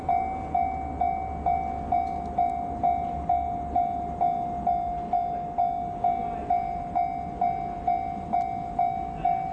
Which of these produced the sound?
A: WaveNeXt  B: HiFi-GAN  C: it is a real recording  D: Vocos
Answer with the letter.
C